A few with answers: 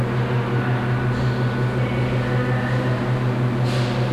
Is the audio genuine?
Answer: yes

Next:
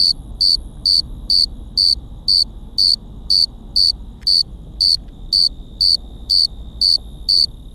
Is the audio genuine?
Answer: yes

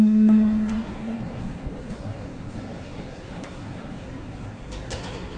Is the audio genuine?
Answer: no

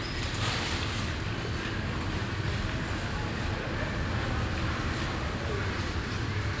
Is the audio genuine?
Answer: yes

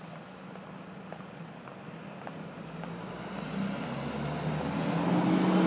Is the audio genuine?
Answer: yes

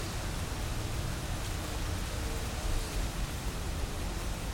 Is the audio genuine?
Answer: yes